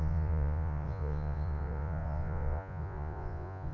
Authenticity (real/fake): fake